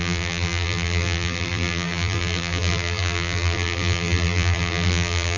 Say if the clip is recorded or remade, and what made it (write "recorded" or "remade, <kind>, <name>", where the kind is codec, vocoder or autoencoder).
remade, vocoder, BigVGAN v2